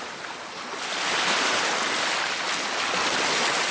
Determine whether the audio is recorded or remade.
recorded